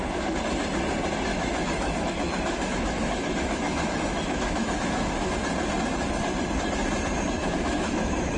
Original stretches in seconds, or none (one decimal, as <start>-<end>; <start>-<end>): 0.0-1.3; 5.3-7.4